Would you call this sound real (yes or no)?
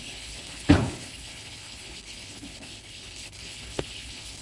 no